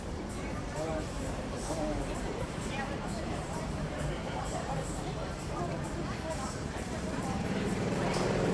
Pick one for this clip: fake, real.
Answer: fake